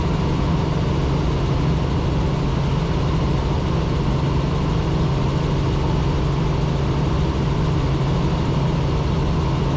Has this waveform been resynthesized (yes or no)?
no